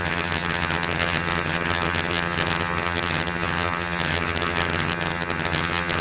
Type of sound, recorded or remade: remade